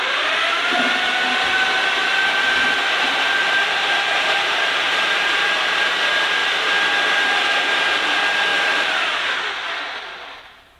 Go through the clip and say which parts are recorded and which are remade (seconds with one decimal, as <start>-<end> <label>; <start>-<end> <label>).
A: 0.0-2.0 recorded; 2.0-6.0 remade; 6.0-6.4 recorded; 6.4-7.5 remade; 7.5-8.5 recorded; 8.5-9.3 remade; 9.3-10.8 recorded